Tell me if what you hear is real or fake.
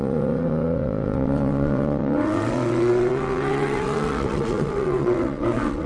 fake